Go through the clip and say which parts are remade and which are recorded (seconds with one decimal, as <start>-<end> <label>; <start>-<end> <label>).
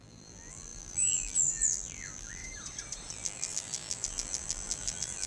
0.0-2.4 remade; 2.4-3.1 recorded; 3.1-5.3 remade